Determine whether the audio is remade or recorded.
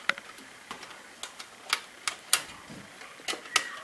recorded